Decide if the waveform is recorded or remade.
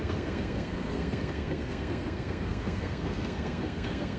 remade